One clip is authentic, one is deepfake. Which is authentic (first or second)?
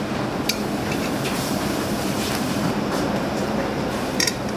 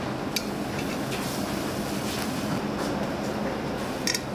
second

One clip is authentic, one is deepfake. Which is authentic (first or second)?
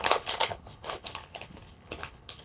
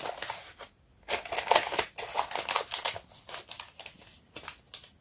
second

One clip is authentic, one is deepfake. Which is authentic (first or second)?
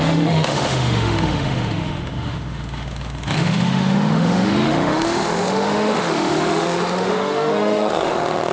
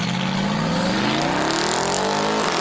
second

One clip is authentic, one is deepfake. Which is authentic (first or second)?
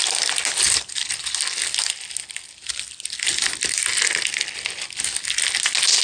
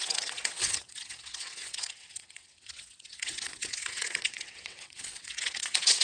first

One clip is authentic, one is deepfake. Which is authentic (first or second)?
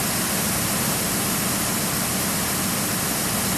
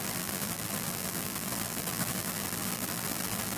first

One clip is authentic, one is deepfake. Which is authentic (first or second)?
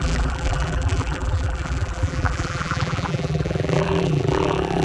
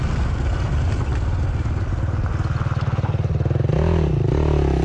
second